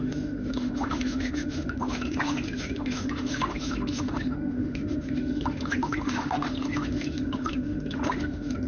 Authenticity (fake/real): fake